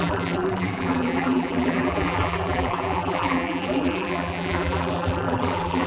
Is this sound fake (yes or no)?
yes